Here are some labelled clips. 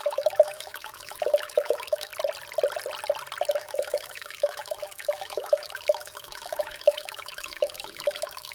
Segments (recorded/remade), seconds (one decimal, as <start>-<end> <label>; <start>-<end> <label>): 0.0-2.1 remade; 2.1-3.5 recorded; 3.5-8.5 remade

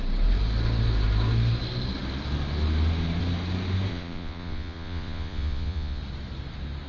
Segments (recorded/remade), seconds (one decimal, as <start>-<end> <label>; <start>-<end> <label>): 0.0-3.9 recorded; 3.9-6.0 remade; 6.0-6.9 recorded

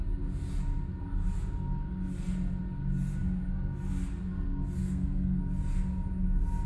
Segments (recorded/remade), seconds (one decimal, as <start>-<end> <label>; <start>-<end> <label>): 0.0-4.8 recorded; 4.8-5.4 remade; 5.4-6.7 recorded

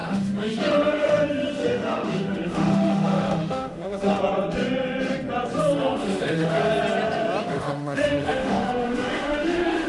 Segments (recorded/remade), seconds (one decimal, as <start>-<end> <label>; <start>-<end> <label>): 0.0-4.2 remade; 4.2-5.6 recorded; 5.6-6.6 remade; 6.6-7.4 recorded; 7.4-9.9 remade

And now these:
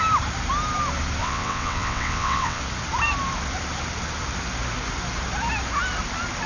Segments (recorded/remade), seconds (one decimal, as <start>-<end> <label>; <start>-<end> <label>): 0.0-1.2 recorded; 1.2-2.6 remade; 2.6-6.5 recorded

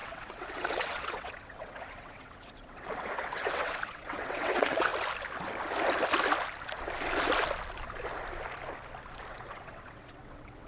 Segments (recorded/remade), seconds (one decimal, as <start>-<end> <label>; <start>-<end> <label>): 0.0-4.9 remade; 4.9-9.3 recorded; 9.3-10.7 remade